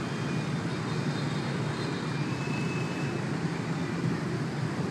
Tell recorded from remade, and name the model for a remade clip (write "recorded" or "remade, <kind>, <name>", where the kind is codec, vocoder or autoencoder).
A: recorded